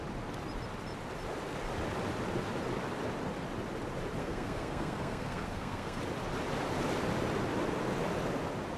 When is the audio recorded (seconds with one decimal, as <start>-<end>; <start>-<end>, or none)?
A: 0.0-4.2; 6.0-8.8